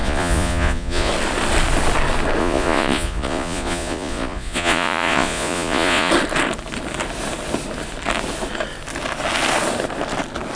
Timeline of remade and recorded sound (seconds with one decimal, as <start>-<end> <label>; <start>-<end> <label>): 0.0-1.1 remade; 1.1-2.4 recorded; 2.4-6.1 remade; 6.1-10.6 recorded

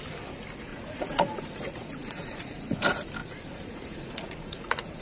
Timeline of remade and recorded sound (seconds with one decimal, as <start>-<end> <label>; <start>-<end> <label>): 0.0-0.7 recorded; 0.7-2.8 remade; 2.8-3.2 recorded; 3.2-5.0 remade

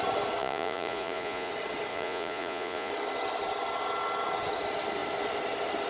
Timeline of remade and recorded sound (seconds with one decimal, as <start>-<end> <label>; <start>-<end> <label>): 0.0-0.4 recorded; 0.4-1.5 remade; 1.5-1.9 recorded; 1.9-2.9 remade; 2.9-5.9 recorded

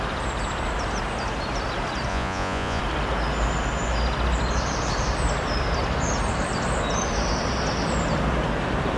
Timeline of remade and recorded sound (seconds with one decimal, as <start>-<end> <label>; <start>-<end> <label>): 0.0-2.1 recorded; 2.1-2.8 remade; 2.8-9.0 recorded

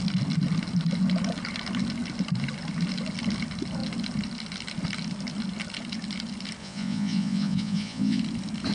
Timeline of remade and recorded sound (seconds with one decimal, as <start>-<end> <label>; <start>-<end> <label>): 0.0-6.6 recorded; 6.6-8.2 remade; 8.2-8.7 recorded

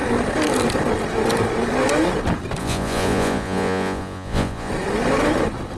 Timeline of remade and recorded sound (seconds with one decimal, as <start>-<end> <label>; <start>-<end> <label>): 0.0-2.6 recorded; 2.6-4.7 remade; 4.7-5.8 recorded

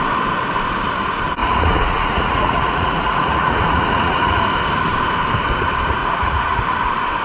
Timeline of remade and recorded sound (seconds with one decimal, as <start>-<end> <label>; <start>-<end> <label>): 0.0-1.4 recorded; 1.4-4.4 remade; 4.4-6.0 recorded; 6.0-6.6 remade; 6.6-7.2 recorded

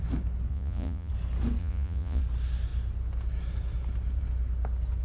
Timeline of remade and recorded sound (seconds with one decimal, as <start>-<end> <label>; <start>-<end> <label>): 0.0-0.5 recorded; 0.5-1.1 remade; 1.1-1.6 recorded; 1.6-2.2 remade; 2.2-5.0 recorded